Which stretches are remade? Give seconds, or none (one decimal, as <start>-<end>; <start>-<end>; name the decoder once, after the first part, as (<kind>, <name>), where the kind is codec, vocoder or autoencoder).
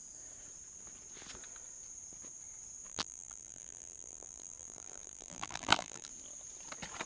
2.9-6.1 (vocoder, BigVGAN v2)